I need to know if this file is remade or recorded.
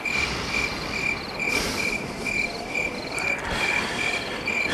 recorded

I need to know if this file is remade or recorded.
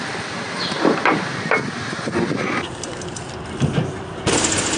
recorded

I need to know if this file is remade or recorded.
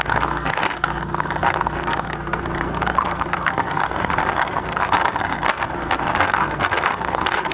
remade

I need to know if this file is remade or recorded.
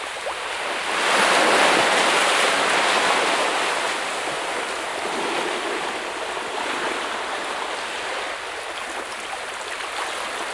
recorded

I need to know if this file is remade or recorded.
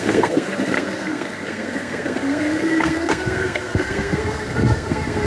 remade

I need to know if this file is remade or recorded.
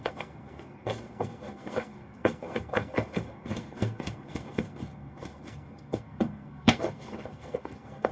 remade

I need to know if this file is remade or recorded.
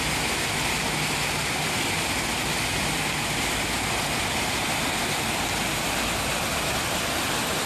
recorded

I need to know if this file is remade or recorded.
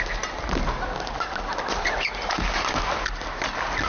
recorded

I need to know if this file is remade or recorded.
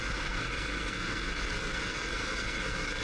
remade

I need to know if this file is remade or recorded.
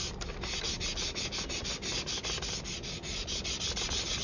recorded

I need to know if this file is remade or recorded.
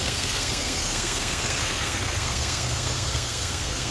remade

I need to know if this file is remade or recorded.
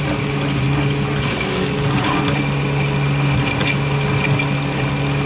recorded